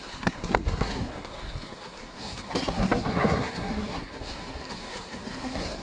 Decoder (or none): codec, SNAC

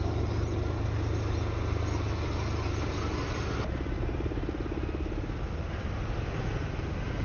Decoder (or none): none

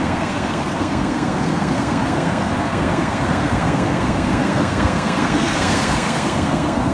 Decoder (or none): codec, SNAC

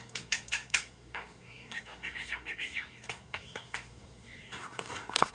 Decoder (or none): codec, SNAC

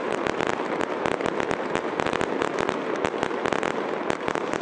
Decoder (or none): none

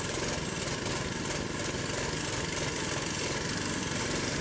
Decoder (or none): none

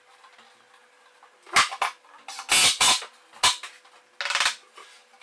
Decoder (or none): none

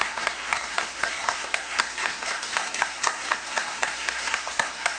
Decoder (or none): codec, SNAC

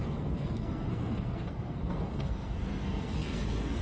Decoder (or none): codec, SNAC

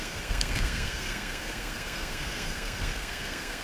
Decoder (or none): codec, SNAC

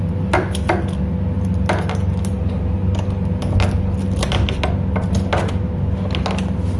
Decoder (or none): none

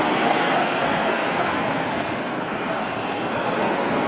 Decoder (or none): codec, SNAC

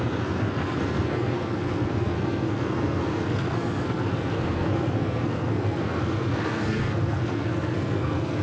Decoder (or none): codec, SNAC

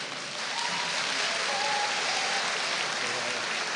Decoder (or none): none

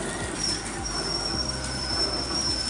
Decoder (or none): none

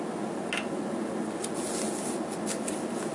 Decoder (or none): none